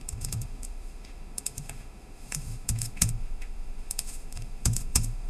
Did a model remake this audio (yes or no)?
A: yes